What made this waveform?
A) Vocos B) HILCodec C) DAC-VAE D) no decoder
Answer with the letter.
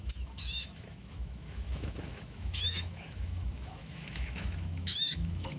C